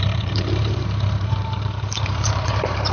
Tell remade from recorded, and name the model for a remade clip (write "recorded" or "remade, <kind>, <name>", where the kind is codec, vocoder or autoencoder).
remade, vocoder, BigVGAN v2